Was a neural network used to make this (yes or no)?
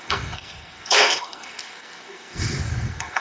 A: yes